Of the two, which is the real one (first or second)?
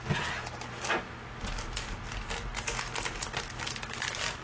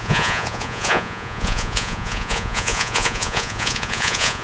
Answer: first